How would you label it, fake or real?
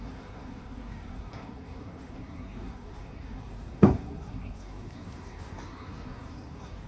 fake